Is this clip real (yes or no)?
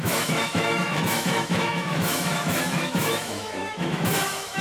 no